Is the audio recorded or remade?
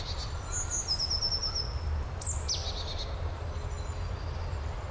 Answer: recorded